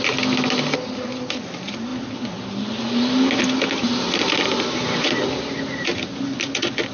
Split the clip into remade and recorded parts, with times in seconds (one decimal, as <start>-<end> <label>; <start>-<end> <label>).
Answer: 0.0-6.9 recorded